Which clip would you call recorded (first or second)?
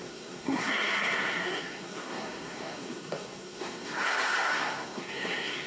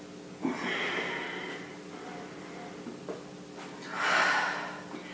second